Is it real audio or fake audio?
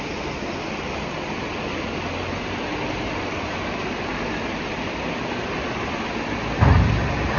real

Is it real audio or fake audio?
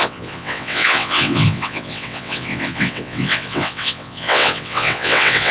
fake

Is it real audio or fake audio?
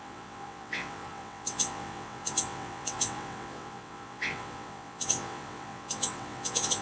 fake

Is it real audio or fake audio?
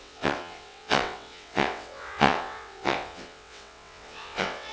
fake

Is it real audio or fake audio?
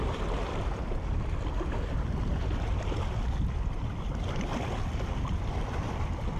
real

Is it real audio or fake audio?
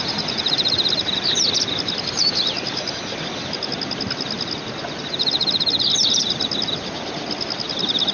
real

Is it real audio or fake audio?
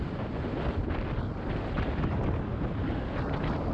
real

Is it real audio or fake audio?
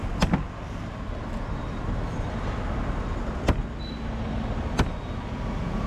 real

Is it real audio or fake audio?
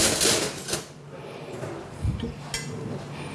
real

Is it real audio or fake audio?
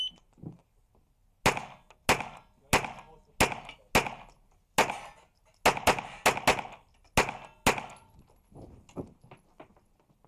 real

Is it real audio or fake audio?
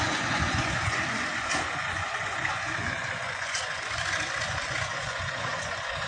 fake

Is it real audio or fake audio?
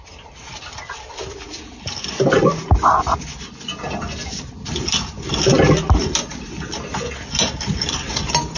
real